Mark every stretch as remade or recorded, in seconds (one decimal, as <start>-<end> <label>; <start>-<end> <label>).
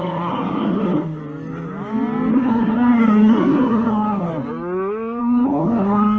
0.0-1.2 remade; 1.2-2.3 recorded; 2.3-4.3 remade; 4.3-5.2 recorded; 5.2-6.2 remade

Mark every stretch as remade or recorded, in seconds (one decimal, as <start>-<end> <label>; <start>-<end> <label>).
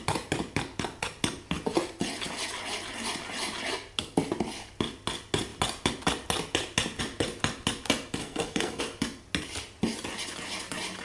0.0-8.2 recorded; 8.2-8.8 remade; 8.8-11.0 recorded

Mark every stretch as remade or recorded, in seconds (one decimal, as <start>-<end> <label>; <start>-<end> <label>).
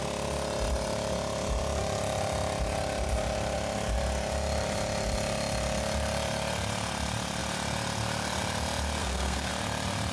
0.0-9.0 recorded; 9.0-9.5 remade; 9.5-10.1 recorded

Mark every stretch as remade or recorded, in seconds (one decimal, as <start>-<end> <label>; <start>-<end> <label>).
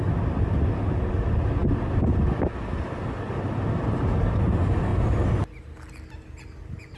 0.0-7.0 recorded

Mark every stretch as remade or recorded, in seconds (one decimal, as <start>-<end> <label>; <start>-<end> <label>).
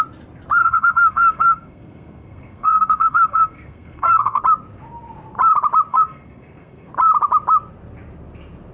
0.0-0.6 recorded; 0.6-4.4 remade; 4.4-5.9 recorded; 5.9-6.9 remade; 6.9-8.7 recorded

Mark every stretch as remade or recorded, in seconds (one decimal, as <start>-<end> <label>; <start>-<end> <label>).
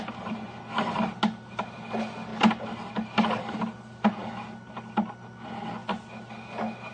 0.0-6.9 recorded